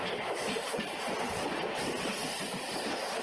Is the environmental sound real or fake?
real